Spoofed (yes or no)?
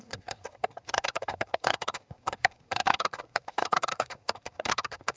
yes